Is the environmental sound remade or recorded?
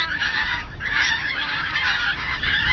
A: remade